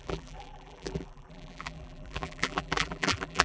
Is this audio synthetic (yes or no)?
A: yes